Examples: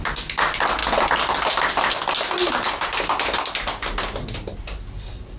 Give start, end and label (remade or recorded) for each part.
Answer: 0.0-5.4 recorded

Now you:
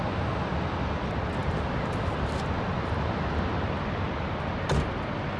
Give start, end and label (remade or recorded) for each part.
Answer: 0.0-5.4 recorded

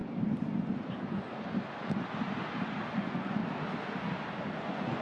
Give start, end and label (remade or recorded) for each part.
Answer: 0.0-3.0 recorded; 3.0-3.4 remade; 3.4-4.5 recorded; 4.5-5.0 remade

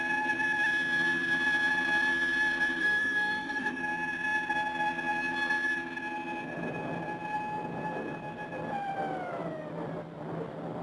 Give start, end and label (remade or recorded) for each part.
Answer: 0.0-2.8 recorded; 2.8-3.8 remade; 3.8-10.8 recorded

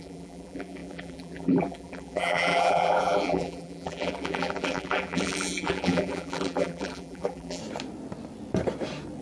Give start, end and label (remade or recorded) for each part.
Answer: 0.0-7.6 remade; 7.6-9.2 recorded

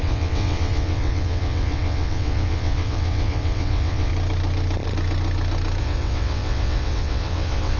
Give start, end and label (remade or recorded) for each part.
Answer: 0.0-4.1 remade; 4.1-5.8 recorded; 5.8-7.8 remade

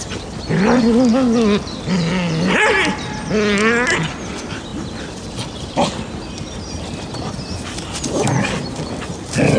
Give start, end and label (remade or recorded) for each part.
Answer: 0.0-9.6 recorded